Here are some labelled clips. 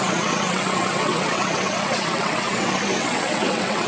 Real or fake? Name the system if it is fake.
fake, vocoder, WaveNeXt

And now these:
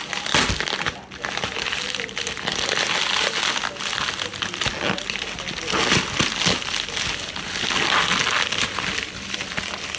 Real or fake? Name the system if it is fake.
real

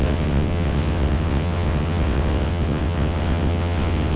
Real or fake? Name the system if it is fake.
fake, vocoder, WaveNeXt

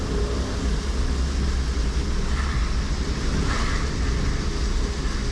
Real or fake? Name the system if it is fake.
real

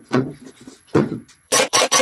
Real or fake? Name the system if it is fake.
fake, vocoder, WaveNeXt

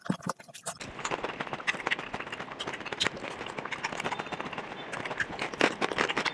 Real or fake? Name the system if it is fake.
real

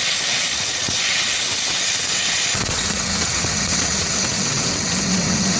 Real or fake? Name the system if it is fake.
fake, vocoder, WaveNeXt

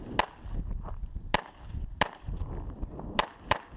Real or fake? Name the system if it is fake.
real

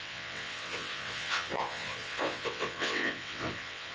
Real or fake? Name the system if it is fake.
fake, vocoder, WaveNeXt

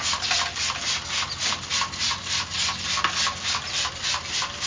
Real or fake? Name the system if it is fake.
real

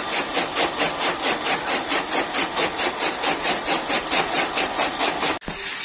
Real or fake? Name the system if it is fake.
real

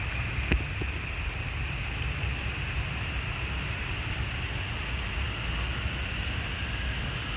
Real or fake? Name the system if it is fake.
real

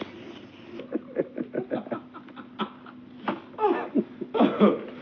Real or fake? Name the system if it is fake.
real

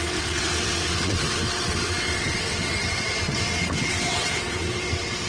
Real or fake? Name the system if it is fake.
fake, vocoder, WaveNeXt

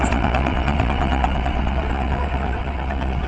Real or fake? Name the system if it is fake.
fake, vocoder, WaveNeXt